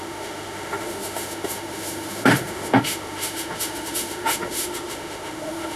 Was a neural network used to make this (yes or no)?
yes